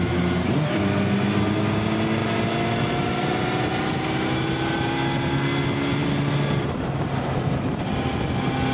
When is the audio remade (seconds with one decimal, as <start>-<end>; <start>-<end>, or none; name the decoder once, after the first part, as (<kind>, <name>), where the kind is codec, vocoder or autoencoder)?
none

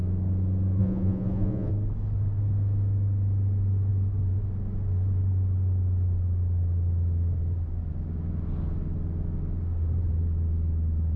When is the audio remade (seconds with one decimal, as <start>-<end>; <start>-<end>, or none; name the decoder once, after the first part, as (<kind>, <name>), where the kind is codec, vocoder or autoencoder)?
0.8-1.7 (vocoder, Vocos)

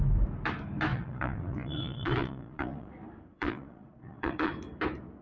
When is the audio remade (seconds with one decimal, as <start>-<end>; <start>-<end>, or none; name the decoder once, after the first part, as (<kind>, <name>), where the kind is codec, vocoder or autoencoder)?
0.9-2.9 (vocoder, Vocos); 3.3-4.5

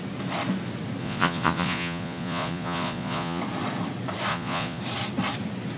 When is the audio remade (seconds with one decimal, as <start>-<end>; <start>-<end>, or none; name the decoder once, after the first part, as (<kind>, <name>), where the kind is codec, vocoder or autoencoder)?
1.0-3.4 (vocoder, Vocos); 4.3-4.8

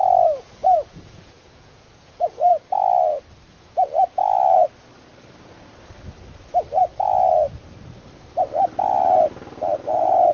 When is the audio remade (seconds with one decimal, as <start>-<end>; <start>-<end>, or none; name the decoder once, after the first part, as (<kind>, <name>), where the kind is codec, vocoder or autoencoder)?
0.0-2.5 (vocoder, Vocos); 3.5-4.2; 6.8-7.3; 9.9-10.3

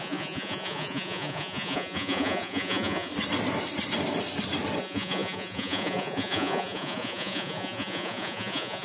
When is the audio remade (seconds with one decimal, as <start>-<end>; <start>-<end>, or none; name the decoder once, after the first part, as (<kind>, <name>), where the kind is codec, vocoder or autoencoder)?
0.0-3.1 (vocoder, Vocos); 4.8-8.8